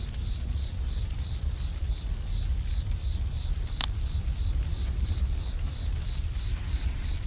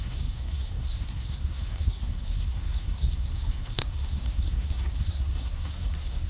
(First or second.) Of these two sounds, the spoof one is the second